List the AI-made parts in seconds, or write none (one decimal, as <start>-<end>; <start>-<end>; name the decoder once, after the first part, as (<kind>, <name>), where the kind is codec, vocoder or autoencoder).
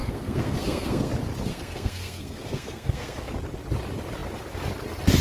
0.0-1.1 (codec, SNAC); 1.5-3.3